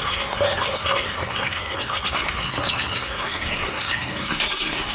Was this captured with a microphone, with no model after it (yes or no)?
no